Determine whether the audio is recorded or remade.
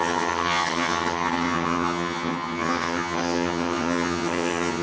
remade